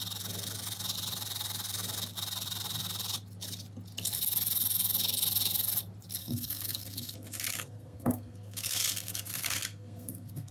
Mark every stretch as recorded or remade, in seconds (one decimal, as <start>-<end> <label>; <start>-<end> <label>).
0.0-6.2 recorded; 6.2-10.5 remade